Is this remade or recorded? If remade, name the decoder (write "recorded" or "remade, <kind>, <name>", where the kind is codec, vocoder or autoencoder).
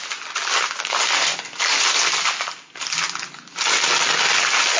recorded